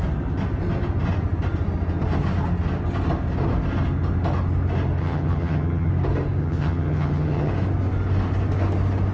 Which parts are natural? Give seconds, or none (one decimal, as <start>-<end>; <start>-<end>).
0.0-5.0; 5.9-6.4; 7.5-9.1

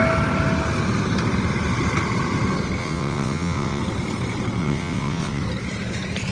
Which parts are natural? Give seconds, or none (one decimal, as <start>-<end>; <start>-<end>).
0.0-2.8; 3.8-4.6; 5.4-6.3